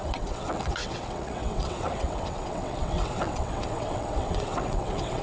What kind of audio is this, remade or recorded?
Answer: remade